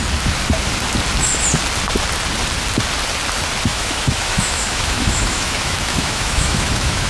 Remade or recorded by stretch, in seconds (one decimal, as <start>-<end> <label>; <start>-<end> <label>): 0.0-3.7 recorded; 3.7-7.1 remade